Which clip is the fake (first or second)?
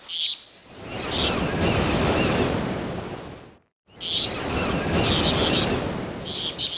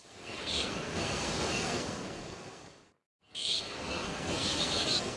second